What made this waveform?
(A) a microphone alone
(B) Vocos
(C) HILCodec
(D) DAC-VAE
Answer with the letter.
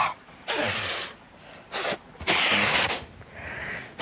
A